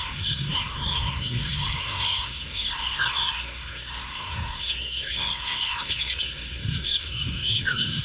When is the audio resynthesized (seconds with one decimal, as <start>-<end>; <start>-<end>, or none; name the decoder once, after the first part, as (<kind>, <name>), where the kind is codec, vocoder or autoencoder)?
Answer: 0.0-8.0 (codec, SNAC)